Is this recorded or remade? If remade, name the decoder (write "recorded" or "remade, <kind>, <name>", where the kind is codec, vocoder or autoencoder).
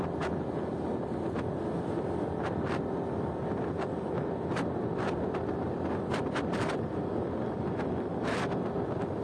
recorded